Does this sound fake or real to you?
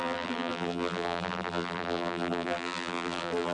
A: fake